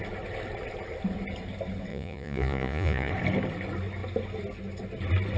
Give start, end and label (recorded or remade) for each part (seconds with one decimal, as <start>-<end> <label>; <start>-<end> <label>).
0.0-1.9 recorded; 1.9-3.1 remade; 3.1-5.4 recorded